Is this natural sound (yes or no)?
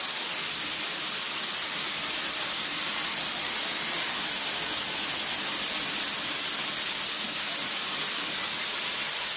yes